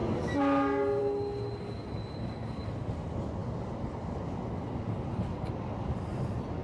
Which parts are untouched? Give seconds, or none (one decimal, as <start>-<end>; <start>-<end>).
0.0-6.6